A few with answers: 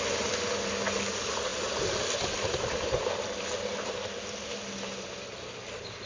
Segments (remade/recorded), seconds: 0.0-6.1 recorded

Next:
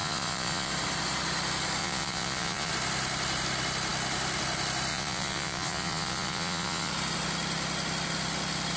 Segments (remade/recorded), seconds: 0.0-0.7 remade; 0.7-1.8 recorded; 1.8-2.7 remade; 2.7-4.9 recorded; 4.9-6.9 remade; 6.9-8.8 recorded

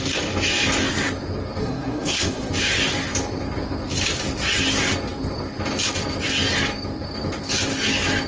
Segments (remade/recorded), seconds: 0.0-1.6 recorded; 1.6-2.5 remade; 2.5-8.3 recorded